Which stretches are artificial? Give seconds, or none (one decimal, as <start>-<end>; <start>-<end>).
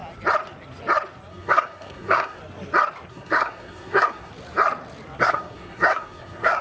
1.3-2.4; 3.1-4.3; 5.2-6.6